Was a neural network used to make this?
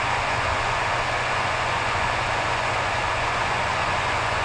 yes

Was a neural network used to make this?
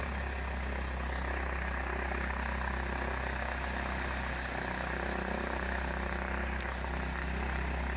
no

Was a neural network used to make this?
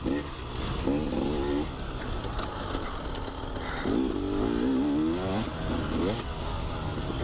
no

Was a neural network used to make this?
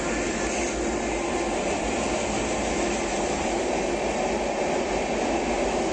no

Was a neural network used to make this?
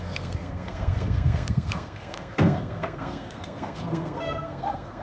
yes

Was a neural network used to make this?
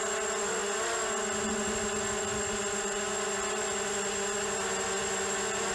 no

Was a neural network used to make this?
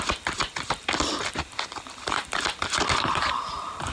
no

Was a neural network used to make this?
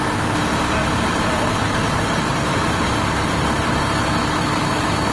no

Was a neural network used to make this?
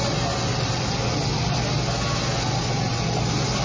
no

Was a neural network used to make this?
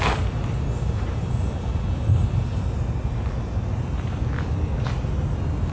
no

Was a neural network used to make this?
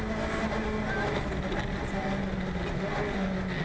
no